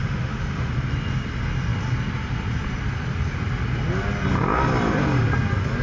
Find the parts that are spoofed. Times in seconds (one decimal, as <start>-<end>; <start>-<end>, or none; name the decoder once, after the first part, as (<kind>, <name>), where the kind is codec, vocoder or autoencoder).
0.0-0.7 (autoencoder, DAC-VAE)